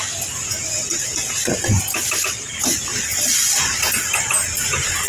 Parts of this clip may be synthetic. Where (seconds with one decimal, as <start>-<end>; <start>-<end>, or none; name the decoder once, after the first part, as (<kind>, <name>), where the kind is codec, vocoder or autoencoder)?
none